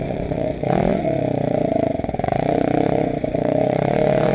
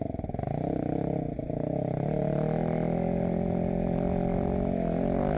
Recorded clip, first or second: second